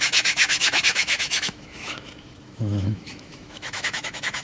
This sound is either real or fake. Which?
fake